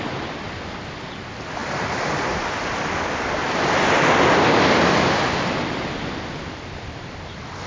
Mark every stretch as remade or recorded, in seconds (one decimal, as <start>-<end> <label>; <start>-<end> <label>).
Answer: 0.0-7.7 recorded